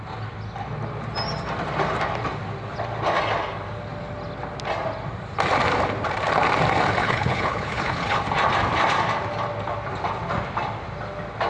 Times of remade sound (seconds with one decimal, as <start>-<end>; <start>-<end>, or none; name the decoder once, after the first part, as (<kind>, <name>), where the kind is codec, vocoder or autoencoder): 7.0-8.2 (codec, HILCodec)